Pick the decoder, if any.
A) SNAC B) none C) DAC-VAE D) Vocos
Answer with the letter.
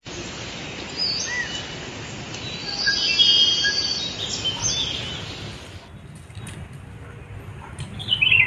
B